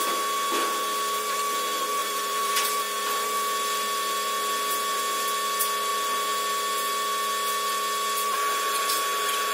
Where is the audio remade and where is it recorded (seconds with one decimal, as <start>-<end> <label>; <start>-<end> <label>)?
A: 0.0-2.0 recorded; 2.0-2.5 remade; 2.5-9.5 recorded